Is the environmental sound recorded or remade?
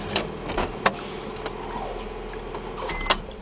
recorded